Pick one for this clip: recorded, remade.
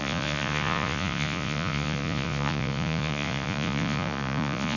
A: remade